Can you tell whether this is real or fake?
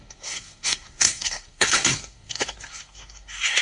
fake